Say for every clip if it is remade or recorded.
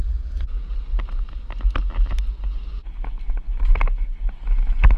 recorded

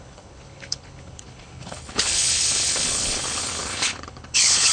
remade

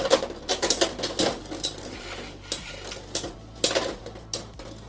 recorded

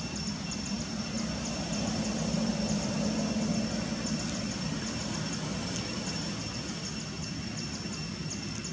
recorded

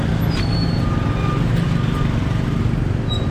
recorded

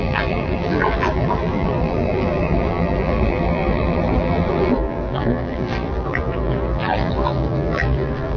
remade